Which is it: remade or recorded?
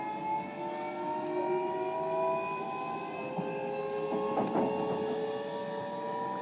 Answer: recorded